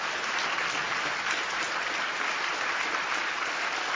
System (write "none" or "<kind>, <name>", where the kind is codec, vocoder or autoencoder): none